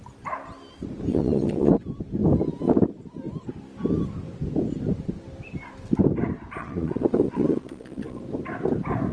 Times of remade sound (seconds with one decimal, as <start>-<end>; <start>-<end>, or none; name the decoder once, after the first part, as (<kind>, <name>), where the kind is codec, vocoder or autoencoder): 1.1-1.7 (vocoder, Vocos); 6.6-8.2